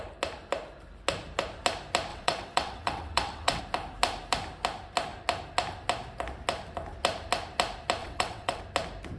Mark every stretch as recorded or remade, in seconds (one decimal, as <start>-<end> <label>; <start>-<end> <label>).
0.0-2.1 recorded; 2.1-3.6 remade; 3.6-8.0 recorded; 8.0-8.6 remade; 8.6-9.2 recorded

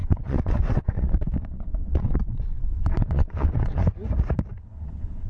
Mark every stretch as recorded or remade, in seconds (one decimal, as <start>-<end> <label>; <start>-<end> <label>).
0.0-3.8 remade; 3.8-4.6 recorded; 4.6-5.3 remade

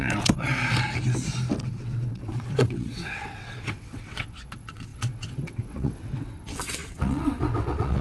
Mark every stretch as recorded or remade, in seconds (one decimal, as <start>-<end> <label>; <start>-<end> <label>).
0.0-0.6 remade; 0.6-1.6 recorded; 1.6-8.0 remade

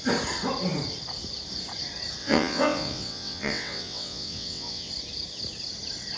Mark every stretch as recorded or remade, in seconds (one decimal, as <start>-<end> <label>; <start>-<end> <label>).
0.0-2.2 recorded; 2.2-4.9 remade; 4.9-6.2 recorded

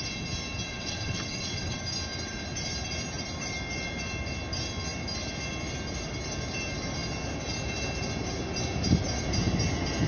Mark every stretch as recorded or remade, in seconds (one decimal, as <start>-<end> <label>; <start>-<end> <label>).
0.0-0.7 recorded; 0.7-1.8 remade; 1.8-10.1 recorded

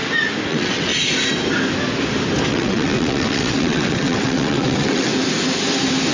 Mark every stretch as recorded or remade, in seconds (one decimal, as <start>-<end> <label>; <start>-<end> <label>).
0.0-0.5 recorded; 0.5-0.9 remade; 0.9-2.5 recorded; 2.5-5.1 remade; 5.1-6.1 recorded

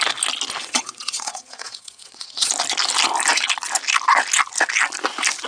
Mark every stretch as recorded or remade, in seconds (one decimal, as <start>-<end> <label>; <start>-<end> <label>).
0.0-0.6 recorded; 0.6-2.5 remade; 2.5-5.5 recorded